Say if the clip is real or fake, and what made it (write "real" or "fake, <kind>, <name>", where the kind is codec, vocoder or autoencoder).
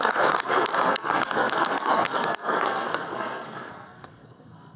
fake, codec, SNAC